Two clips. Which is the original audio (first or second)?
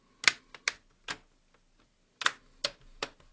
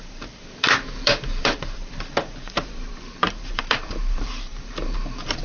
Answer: first